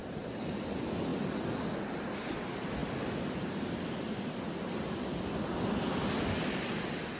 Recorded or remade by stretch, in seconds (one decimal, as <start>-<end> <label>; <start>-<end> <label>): 0.0-7.2 recorded